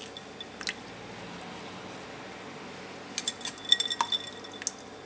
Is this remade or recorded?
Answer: recorded